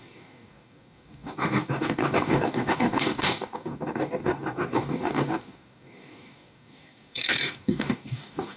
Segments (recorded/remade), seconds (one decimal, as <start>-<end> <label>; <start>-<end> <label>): 0.0-8.6 remade